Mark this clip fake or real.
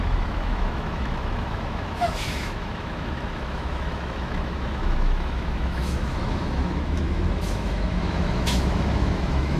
fake